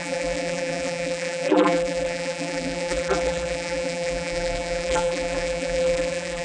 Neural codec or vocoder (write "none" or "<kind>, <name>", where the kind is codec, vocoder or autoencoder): vocoder, BigVGAN v2